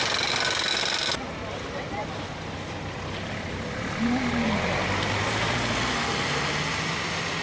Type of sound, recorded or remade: remade